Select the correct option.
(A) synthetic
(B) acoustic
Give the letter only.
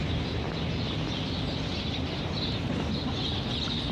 B